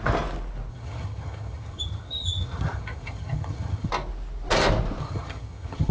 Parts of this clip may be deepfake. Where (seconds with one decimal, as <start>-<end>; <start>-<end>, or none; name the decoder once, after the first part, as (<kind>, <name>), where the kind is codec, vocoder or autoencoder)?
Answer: 0.7-3.9 (vocoder, HiFi-GAN); 5.0-5.9